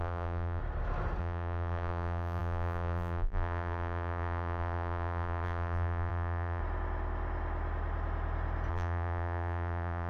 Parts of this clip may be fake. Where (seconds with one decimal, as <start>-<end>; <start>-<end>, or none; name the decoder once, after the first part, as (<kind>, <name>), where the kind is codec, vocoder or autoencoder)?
0.0-0.6 (vocoder, BigVGAN v2); 1.2-6.6; 8.7-10.1